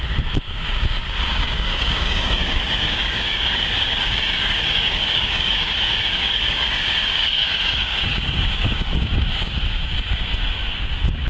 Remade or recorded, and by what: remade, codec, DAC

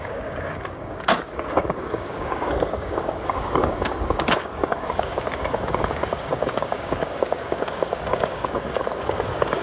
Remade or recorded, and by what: remade, codec, DAC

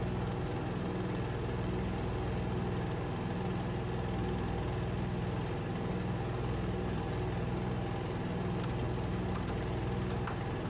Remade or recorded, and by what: recorded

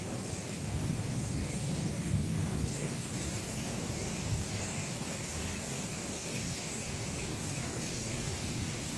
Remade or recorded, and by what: remade, codec, DAC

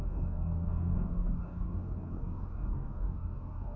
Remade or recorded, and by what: remade, codec, DAC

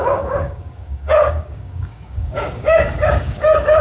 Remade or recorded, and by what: remade, codec, DAC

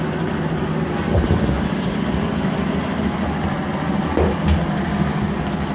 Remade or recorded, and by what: recorded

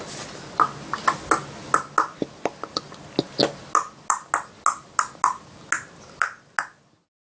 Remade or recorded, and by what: recorded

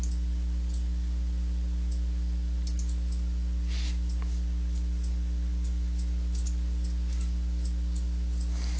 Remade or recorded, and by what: recorded